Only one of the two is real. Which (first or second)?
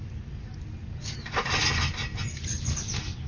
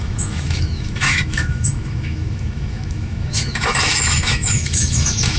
first